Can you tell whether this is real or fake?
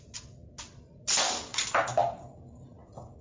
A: real